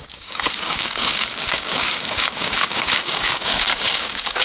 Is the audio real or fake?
fake